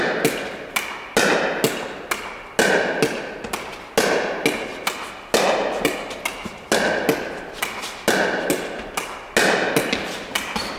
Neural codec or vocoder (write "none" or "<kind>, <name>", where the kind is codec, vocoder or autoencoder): none